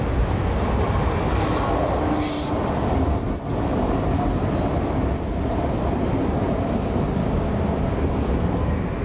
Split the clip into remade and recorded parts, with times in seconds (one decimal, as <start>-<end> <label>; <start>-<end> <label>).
0.0-7.2 recorded; 7.2-8.5 remade; 8.5-9.0 recorded